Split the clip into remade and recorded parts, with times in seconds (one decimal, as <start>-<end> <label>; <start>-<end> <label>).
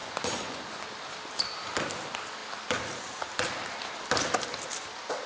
0.0-0.8 remade; 0.8-5.3 recorded